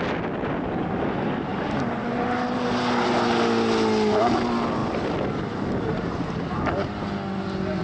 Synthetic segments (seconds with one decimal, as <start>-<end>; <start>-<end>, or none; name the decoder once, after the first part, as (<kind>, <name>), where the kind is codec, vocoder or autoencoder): none